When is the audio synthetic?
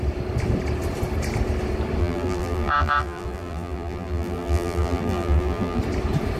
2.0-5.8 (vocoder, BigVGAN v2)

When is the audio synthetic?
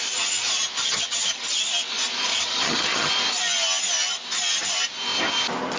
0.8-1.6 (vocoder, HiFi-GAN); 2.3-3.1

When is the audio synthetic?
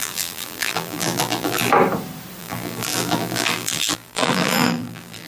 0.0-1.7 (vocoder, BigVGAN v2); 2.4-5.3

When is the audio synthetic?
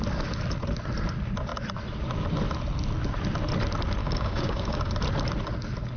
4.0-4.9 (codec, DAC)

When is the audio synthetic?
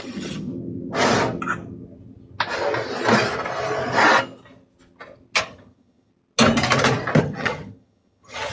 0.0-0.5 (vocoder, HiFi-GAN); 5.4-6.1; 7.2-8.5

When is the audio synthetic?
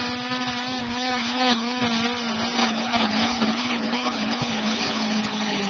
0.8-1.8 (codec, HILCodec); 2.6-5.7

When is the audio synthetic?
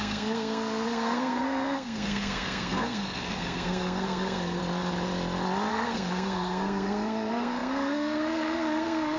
0.0-4.6 (codec, SNAC); 5.7-9.2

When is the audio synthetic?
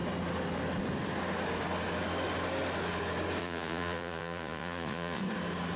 3.4-5.2 (vocoder, Vocos)